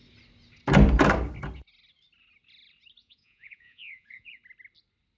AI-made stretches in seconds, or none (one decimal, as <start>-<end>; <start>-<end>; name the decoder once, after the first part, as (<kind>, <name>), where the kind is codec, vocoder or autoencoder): 3.0-4.4 (vocoder, Vocos)